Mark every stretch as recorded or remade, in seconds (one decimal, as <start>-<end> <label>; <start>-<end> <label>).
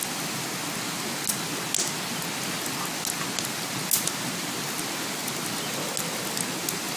0.0-7.0 recorded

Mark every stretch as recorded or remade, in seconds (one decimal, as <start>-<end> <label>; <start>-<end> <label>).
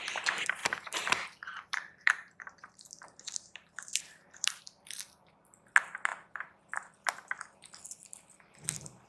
0.0-0.6 recorded; 0.6-4.6 remade; 4.6-9.1 recorded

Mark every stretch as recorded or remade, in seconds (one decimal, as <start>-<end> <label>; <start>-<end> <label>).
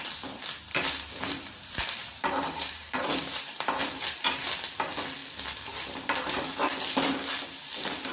0.0-0.7 recorded; 0.7-4.5 remade; 4.5-8.1 recorded